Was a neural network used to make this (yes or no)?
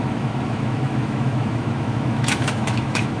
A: yes